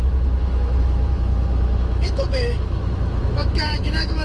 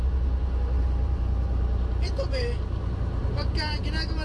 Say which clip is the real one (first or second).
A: second